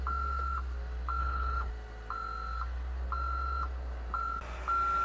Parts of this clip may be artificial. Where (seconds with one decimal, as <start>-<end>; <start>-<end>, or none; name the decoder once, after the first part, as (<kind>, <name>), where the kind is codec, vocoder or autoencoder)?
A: 1.2-1.7 (codec, HILCodec)